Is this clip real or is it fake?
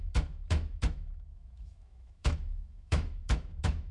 fake